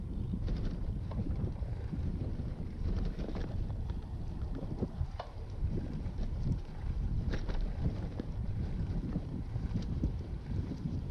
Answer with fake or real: fake